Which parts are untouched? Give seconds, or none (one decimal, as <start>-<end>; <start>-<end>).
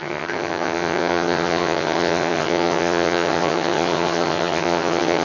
none